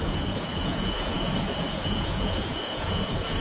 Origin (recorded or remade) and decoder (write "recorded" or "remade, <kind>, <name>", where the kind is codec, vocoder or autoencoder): remade, vocoder, Vocos